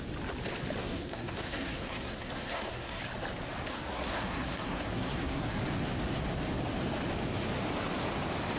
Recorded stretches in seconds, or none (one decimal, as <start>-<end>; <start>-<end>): 0.0-0.8; 3.0-3.7; 5.6-8.6